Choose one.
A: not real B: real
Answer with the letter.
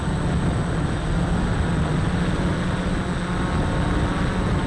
B